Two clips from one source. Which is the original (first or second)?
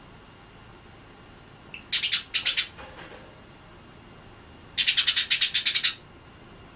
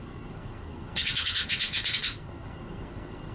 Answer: first